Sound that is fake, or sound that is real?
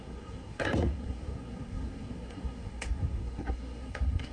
fake